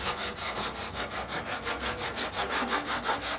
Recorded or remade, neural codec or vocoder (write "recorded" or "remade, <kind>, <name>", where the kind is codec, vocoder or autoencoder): remade, codec, SNAC